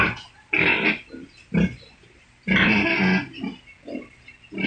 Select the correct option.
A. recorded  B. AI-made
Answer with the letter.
A